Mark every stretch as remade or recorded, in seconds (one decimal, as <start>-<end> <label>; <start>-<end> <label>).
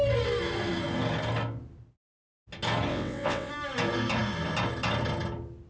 0.0-2.9 recorded; 2.9-3.5 remade; 3.5-5.7 recorded